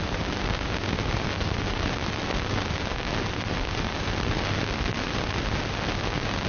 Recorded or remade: recorded